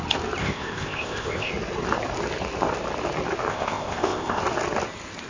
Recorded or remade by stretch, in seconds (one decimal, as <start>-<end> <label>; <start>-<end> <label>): 0.0-0.4 recorded; 0.4-1.5 remade; 1.5-3.5 recorded; 3.5-4.4 remade; 4.4-5.3 recorded